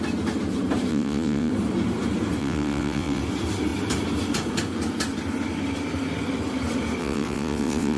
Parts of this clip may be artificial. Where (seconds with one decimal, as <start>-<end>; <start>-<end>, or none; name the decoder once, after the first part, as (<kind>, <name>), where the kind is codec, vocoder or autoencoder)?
0.9-1.5 (vocoder, WaveNeXt); 2.4-3.2; 7.0-8.0